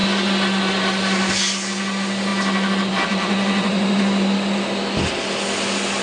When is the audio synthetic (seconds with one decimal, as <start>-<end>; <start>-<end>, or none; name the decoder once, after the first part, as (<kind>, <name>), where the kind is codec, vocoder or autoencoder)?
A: none